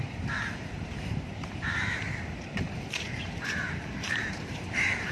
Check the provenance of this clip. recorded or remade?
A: remade